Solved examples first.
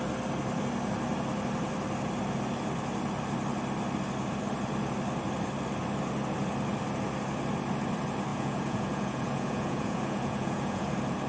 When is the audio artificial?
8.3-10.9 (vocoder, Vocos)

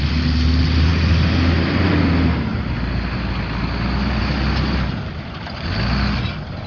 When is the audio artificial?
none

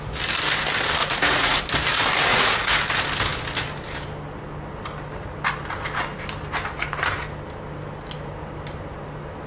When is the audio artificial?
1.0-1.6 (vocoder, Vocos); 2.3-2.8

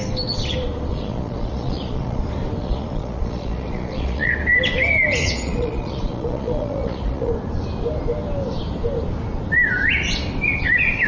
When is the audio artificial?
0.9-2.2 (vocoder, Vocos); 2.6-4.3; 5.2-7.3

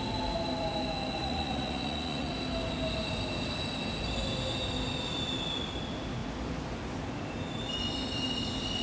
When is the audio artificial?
1.2-2.3 (vocoder, Vocos)

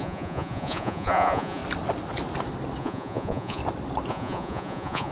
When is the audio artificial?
0.0-1.6 (vocoder, Vocos); 2.8-3.6; 4.1-5.1

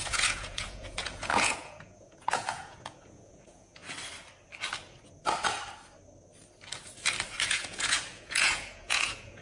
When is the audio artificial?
0.0-3.8 (vocoder, Vocos); 7.5-9.4

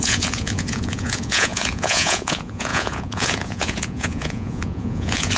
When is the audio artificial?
0.0-5.4 (vocoder, Vocos)